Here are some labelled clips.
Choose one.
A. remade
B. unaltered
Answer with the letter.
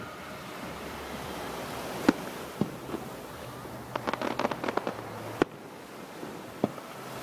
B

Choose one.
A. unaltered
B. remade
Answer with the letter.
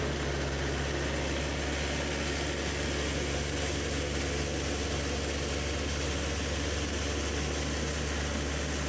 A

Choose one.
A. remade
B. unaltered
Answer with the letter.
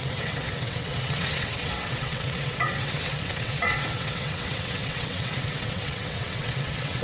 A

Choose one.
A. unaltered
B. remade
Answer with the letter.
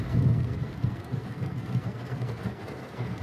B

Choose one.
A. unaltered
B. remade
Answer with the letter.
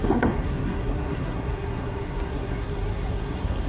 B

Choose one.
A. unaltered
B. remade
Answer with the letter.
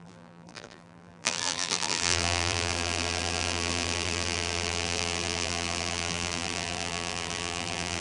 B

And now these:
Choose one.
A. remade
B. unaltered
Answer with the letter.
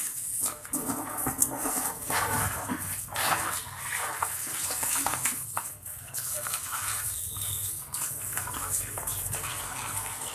A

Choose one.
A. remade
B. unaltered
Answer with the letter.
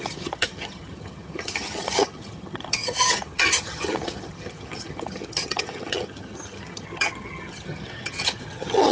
A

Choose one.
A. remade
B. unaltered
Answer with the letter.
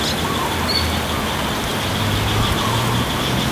B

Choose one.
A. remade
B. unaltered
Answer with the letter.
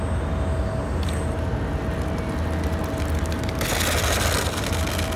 B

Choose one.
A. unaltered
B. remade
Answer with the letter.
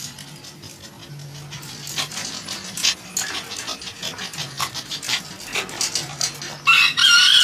A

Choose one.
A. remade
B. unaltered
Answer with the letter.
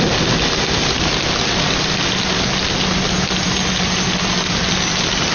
B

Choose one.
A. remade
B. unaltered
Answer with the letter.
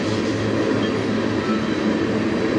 B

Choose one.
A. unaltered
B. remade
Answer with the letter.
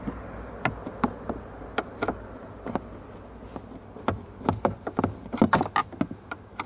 A